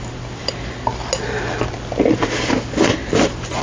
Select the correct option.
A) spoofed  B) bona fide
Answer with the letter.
B